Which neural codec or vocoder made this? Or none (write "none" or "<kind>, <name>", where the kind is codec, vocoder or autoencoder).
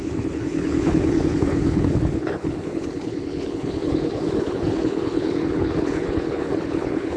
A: codec, HILCodec